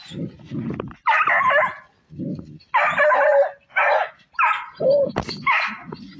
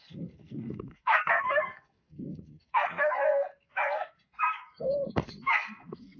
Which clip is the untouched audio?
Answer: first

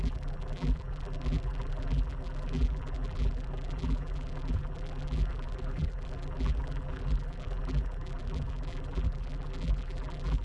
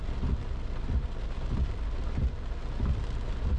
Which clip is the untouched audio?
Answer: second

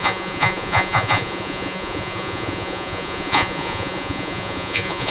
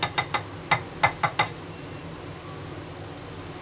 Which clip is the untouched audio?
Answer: second